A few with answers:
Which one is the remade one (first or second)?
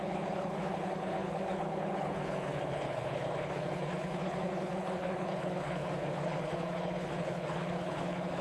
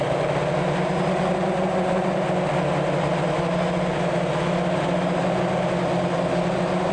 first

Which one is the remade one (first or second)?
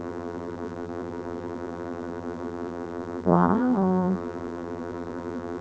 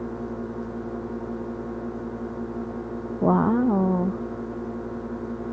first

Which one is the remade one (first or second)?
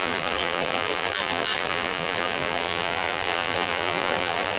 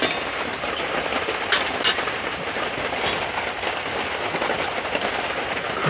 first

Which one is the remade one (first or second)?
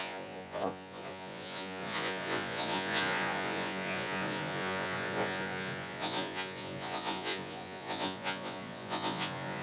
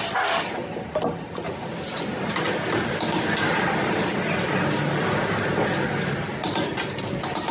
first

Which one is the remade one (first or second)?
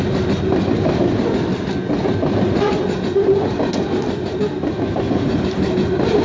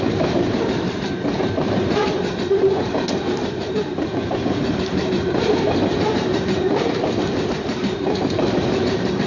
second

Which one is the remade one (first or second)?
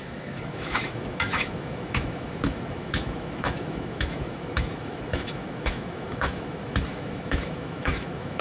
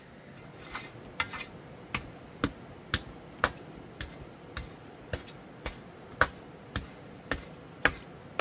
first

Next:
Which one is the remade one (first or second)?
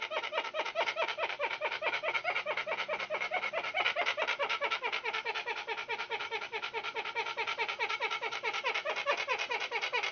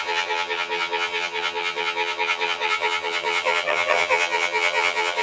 second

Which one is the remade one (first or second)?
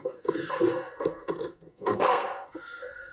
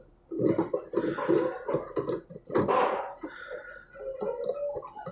first